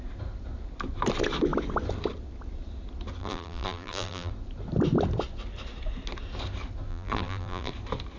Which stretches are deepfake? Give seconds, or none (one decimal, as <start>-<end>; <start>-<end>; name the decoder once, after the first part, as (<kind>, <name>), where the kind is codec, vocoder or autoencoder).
3.2-4.3 (vocoder, BigVGAN v2); 6.9-7.7